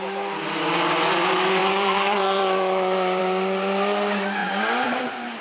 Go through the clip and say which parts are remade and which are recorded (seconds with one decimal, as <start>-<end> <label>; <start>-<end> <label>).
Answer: 0.0-1.6 recorded; 1.6-3.2 remade; 3.2-4.4 recorded; 4.4-5.4 remade